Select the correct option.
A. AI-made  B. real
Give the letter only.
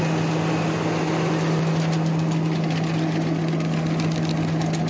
B